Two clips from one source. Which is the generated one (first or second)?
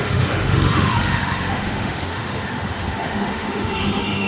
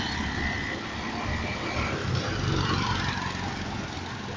first